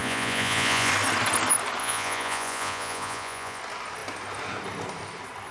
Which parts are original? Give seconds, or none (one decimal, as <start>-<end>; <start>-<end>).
0.9-1.8; 3.6-5.5